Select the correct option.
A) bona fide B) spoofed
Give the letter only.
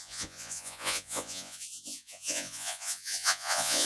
B